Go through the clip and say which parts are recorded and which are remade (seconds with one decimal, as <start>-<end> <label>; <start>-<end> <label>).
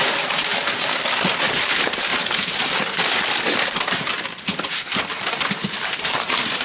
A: 0.0-0.5 remade; 0.5-1.3 recorded; 1.3-2.1 remade; 2.1-5.7 recorded; 5.7-6.6 remade